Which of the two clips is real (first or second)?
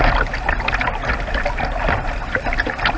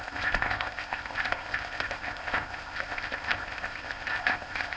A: first